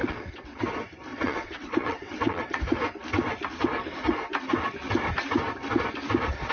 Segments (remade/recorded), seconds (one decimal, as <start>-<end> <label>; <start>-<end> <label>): 0.0-0.6 remade; 0.6-1.1 recorded; 1.1-2.6 remade; 2.6-6.5 recorded